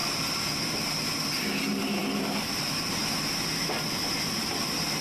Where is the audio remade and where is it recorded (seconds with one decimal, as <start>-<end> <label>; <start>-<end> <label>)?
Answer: 0.0-5.0 recorded